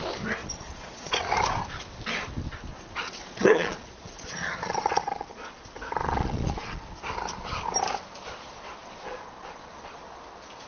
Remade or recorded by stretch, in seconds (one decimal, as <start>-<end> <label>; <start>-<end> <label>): 0.0-0.4 recorded; 0.4-1.1 remade; 1.1-2.7 recorded; 2.7-7.1 remade; 7.1-8.8 recorded; 8.8-10.2 remade; 10.2-10.7 recorded